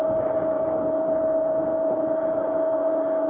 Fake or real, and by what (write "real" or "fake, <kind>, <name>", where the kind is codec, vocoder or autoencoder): real